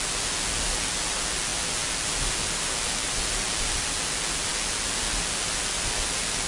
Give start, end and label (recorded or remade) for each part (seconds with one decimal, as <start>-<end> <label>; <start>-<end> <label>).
0.0-6.5 recorded